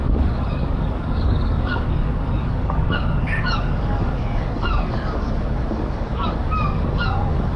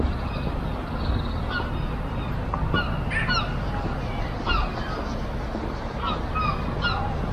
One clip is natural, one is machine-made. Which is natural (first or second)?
second